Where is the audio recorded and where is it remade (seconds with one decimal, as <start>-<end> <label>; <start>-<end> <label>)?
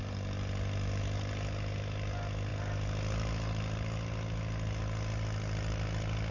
0.0-6.3 recorded